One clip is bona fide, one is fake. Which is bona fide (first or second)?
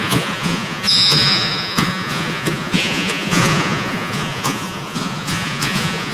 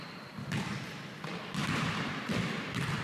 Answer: second